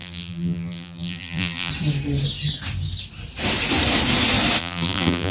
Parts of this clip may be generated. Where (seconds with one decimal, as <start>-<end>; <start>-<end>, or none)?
0.0-1.7; 4.6-5.3